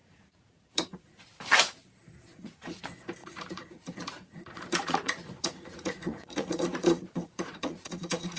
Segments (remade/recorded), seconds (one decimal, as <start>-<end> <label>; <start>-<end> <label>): 0.0-1.2 remade; 1.2-2.3 recorded; 2.3-2.8 remade; 2.8-3.2 recorded; 3.2-8.4 remade